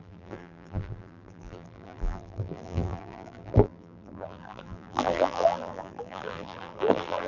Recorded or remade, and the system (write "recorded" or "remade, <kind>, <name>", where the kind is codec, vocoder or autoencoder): remade, vocoder, BigVGAN v2